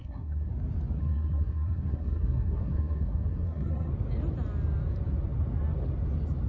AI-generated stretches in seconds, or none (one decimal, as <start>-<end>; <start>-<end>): 0.0-0.5; 1.0-3.9